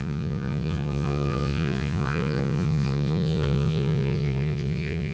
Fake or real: fake